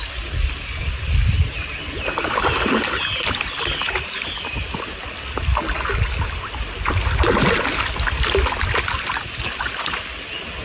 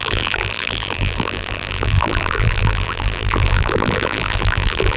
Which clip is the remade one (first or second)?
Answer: second